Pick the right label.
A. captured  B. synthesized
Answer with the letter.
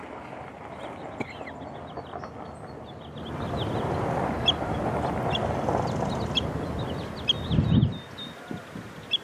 A